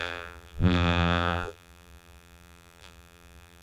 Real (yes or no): no